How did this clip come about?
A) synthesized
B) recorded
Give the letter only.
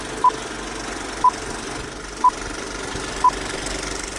B